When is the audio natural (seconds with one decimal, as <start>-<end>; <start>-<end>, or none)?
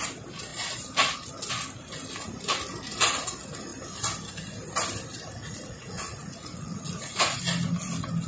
0.0-5.4; 7.4-8.3